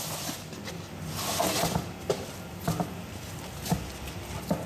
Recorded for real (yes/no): yes